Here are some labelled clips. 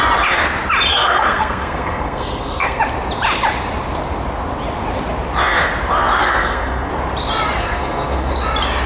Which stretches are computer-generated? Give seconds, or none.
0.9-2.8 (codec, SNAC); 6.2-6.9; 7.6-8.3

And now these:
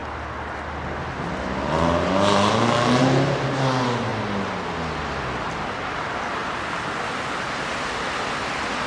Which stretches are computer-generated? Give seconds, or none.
none